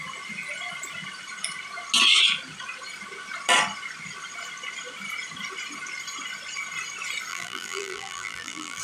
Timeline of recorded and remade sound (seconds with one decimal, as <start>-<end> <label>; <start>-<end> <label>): 0.0-7.3 recorded; 7.3-8.8 remade